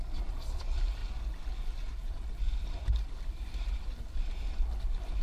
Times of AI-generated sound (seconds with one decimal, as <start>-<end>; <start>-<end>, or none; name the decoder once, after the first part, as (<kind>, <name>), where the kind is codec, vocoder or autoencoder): none